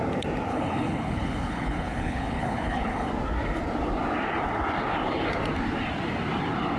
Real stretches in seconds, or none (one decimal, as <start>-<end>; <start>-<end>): 0.0-0.5; 3.1-6.8